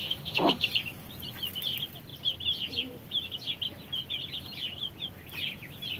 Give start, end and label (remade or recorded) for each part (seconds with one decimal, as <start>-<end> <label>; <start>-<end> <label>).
0.0-0.7 remade; 0.7-6.0 recorded